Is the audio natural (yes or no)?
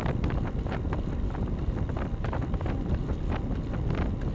yes